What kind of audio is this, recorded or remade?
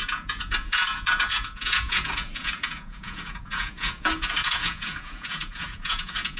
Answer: remade